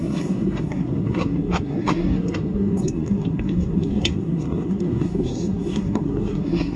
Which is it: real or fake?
fake